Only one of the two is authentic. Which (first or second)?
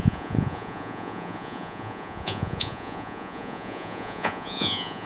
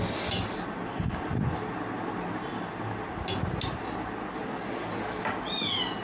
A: second